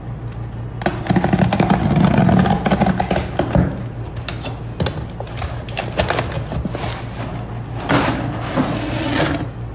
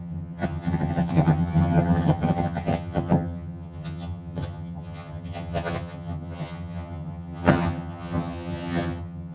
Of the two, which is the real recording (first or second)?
first